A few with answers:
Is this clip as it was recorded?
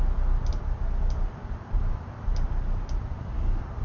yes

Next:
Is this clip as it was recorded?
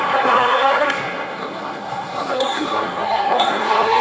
no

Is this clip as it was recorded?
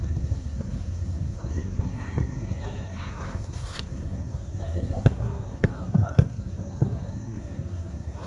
no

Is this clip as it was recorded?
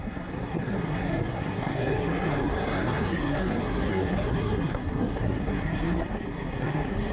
no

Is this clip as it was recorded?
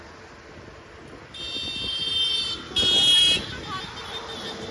yes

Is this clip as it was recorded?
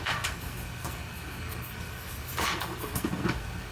no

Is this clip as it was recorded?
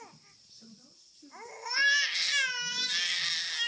yes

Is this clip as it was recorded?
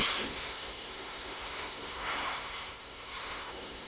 no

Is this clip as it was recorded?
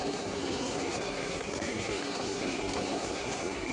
no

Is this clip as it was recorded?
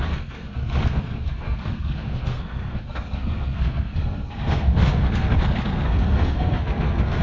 no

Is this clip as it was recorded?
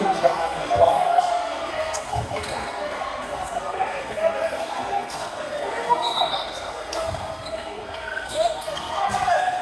no